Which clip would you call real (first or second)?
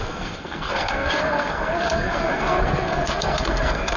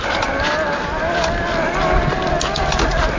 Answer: second